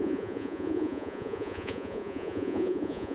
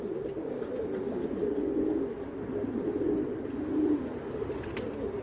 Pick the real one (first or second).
second